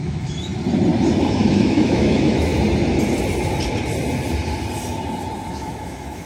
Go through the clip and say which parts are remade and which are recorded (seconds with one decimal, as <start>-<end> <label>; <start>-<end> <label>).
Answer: 0.0-0.5 remade; 0.5-1.3 recorded; 1.3-2.5 remade; 2.5-5.5 recorded; 5.5-6.3 remade